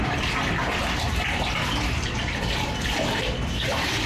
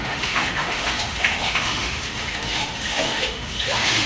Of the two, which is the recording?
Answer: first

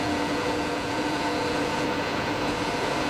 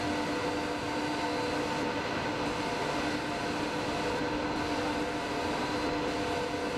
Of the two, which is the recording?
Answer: second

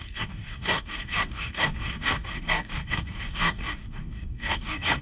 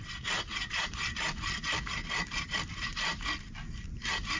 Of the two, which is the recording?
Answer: second